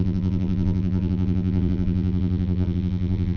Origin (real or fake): fake